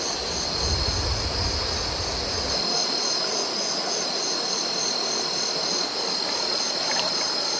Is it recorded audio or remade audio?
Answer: recorded